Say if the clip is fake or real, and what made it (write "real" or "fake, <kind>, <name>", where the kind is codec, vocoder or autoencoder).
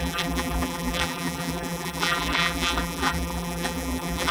fake, vocoder, BigVGAN v2